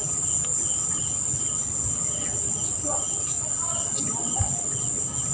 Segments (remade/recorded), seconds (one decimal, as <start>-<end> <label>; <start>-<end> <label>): 0.0-5.3 recorded